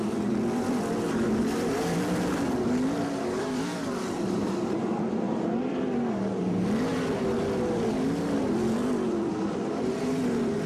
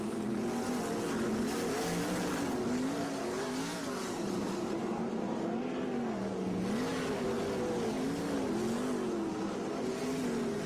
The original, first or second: second